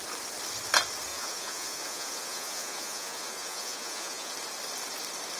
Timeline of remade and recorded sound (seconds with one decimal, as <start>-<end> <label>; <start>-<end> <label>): 0.0-1.1 recorded; 1.1-4.3 remade; 4.3-5.4 recorded